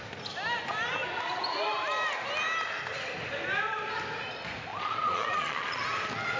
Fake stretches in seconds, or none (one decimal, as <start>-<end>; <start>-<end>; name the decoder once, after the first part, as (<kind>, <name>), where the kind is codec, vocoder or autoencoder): 4.7-5.8 (vocoder, Vocos)